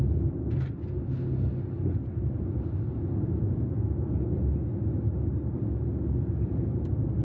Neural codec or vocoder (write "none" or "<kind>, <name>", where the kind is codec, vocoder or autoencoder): none